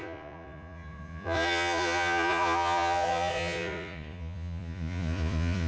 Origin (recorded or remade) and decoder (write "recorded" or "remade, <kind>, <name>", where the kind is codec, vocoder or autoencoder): remade, vocoder, Vocos